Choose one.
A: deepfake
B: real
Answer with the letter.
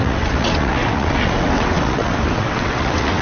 A